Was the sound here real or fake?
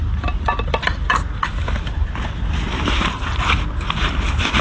real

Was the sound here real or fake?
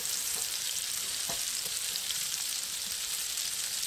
fake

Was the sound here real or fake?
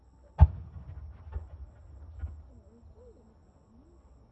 real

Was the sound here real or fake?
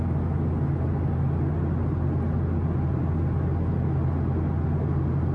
real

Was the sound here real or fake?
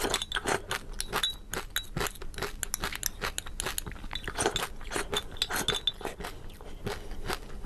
real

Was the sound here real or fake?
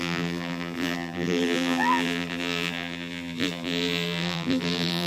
fake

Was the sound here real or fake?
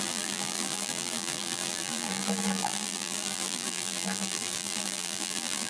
fake